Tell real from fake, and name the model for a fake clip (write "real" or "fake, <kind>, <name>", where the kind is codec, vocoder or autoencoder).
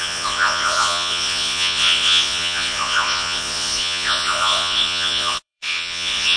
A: fake, vocoder, Vocos